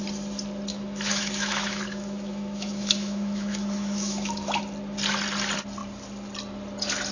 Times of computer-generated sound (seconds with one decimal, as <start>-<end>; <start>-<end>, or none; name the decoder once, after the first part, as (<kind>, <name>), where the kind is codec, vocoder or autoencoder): 0.7-4.6 (autoencoder, DAC-VAE)